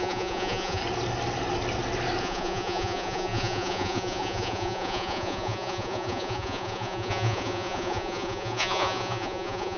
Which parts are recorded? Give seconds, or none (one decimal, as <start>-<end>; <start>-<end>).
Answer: 0.8-2.2